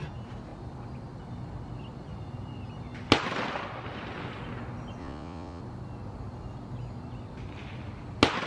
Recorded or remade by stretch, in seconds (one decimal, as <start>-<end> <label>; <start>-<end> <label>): 0.0-5.0 recorded; 5.0-5.6 remade; 5.6-8.5 recorded